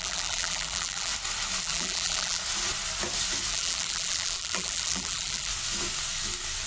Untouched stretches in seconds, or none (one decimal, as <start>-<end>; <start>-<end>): 1.1-1.6; 2.4-3.5; 5.5-6.7